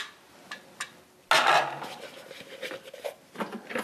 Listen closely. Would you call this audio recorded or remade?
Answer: recorded